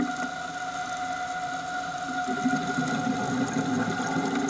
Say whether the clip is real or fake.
real